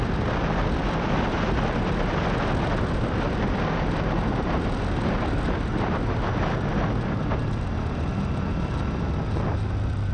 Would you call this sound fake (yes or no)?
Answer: no